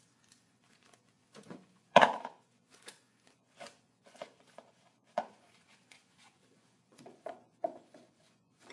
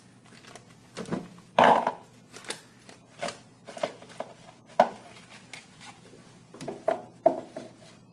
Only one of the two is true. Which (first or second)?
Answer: second